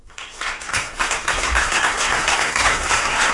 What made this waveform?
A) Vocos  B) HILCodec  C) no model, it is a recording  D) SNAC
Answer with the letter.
D